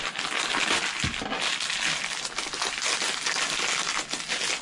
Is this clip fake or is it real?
real